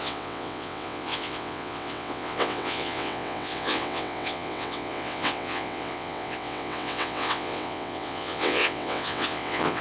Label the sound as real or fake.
fake